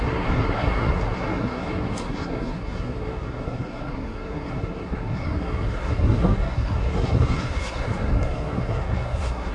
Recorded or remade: remade